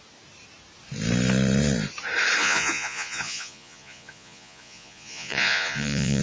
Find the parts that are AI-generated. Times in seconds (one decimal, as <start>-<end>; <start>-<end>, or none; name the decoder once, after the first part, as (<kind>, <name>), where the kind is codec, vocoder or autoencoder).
2.4-6.2 (vocoder, Vocos)